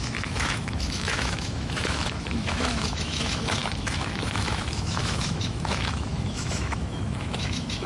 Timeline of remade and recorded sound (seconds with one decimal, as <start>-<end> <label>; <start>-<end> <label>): 0.0-7.9 remade